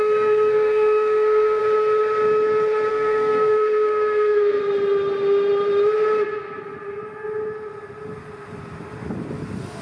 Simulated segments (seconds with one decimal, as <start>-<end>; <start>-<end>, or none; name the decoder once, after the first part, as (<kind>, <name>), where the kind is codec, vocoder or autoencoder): 0.0-1.6 (codec, SNAC); 2.9-4.6